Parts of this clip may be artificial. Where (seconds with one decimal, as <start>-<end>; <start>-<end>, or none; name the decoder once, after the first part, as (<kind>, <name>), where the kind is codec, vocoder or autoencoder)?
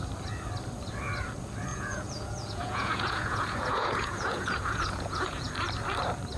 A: 1.7-5.5 (vocoder, Vocos)